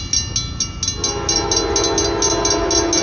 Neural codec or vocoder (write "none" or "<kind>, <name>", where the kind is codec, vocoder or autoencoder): none